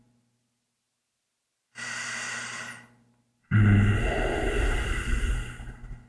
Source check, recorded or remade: recorded